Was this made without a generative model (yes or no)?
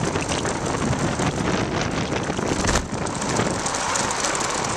yes